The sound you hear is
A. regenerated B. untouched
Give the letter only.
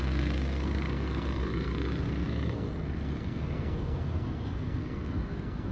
A